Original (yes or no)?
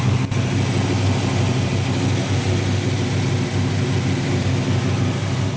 yes